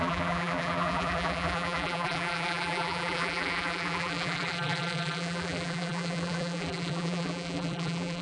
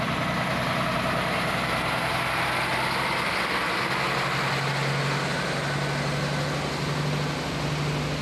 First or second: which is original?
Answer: second